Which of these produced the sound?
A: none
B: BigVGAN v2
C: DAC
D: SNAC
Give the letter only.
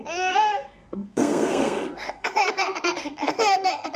D